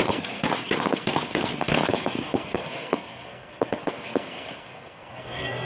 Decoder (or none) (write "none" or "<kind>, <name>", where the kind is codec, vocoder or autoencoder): codec, SNAC